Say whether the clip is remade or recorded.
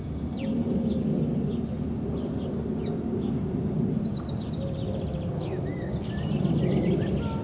recorded